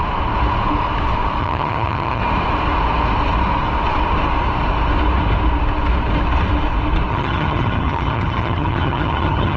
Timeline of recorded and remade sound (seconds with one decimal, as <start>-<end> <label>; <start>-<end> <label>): 0.0-1.4 recorded; 1.4-2.2 remade; 2.2-7.1 recorded; 7.1-9.6 remade